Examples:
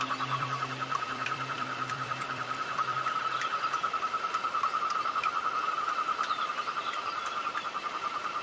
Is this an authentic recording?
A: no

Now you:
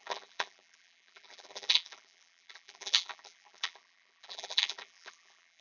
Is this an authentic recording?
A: no